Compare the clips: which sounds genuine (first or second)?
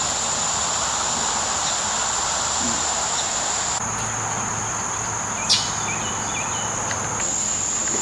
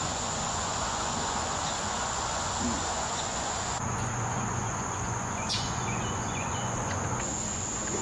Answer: first